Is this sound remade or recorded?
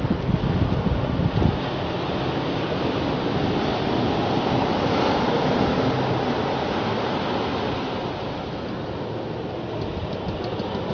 recorded